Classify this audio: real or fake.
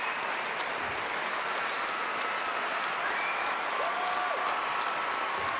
real